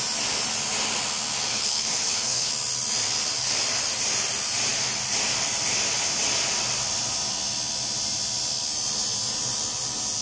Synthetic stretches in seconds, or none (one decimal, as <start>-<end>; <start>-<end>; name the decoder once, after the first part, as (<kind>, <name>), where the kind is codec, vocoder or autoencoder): 1.5-2.5 (codec, HILCodec)